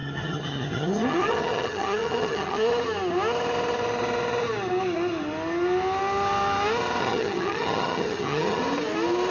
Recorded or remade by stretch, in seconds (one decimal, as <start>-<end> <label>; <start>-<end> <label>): 0.0-2.7 remade; 2.7-7.0 recorded; 7.0-8.6 remade; 8.6-9.3 recorded